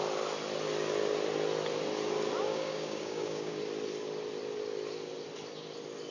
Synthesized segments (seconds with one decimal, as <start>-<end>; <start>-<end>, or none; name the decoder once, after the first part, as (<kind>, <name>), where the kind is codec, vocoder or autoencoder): 2.5-3.6 (codec, DAC)